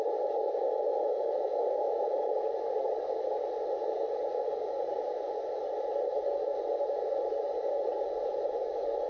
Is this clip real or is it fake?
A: real